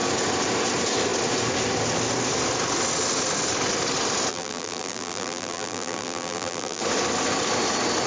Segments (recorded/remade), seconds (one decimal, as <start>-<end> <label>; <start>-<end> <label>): 0.0-4.3 recorded; 4.3-6.8 remade; 6.8-8.1 recorded